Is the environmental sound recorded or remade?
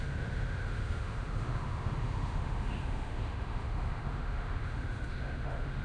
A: remade